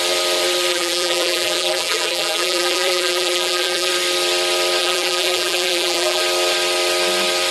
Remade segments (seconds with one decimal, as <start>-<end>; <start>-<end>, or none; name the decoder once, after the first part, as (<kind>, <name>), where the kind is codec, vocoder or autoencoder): 0.7-3.9 (vocoder, BigVGAN v2); 4.8-6.2